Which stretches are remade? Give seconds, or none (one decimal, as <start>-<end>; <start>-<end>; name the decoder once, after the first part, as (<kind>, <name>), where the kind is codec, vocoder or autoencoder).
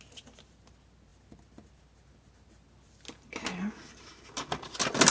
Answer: none